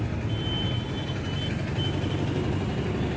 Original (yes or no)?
yes